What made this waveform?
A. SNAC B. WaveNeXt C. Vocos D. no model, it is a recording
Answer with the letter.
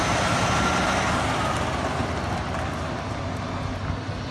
D